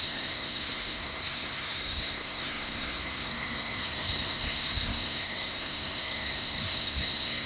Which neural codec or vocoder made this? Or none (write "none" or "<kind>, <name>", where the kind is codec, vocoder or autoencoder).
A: codec, SNAC